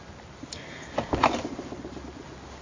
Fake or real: real